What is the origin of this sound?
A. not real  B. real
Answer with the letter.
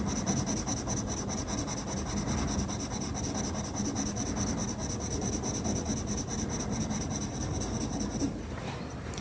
B